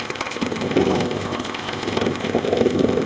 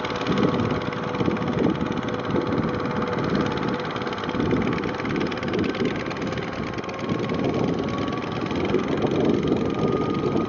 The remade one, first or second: first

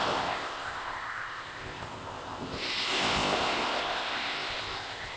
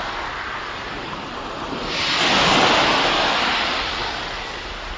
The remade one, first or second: first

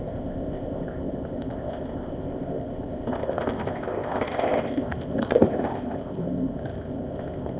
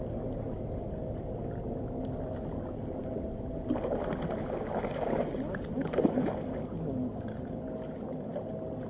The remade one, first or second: first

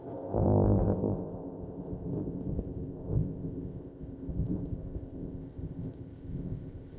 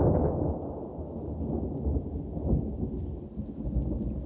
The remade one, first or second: first